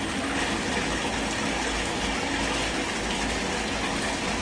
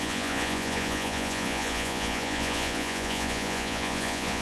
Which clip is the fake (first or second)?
second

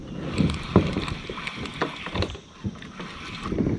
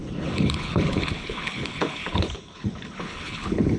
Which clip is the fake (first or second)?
second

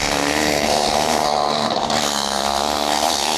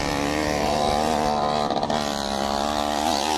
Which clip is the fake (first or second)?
first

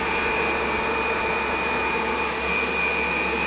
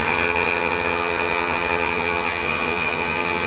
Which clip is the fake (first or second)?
second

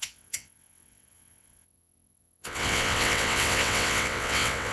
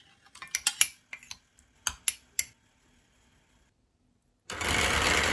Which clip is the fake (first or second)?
first